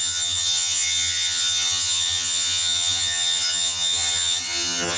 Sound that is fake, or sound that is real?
fake